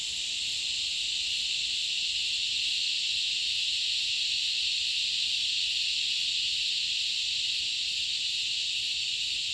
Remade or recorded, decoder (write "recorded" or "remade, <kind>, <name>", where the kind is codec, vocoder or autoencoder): recorded